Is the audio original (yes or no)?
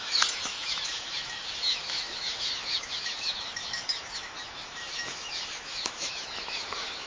no